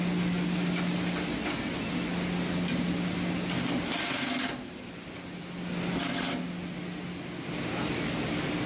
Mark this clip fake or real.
real